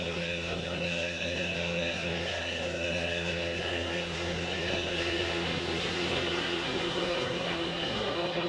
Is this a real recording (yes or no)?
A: no